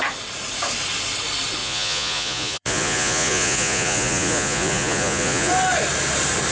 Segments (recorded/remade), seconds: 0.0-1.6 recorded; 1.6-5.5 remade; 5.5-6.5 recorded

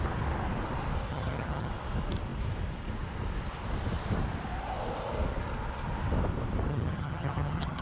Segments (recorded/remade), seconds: 0.0-1.1 recorded; 1.1-1.7 remade; 1.7-6.7 recorded; 6.7-7.8 remade

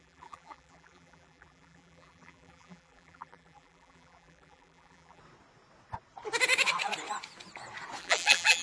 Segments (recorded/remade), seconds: 0.0-5.2 remade; 5.2-8.0 recorded; 8.0-8.6 remade